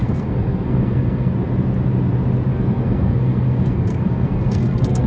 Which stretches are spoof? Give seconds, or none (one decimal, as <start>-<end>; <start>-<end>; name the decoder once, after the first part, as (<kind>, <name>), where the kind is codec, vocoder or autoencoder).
0.0-1.3 (codec, SNAC); 2.5-5.1